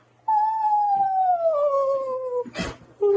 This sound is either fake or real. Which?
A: real